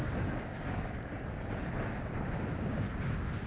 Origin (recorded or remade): remade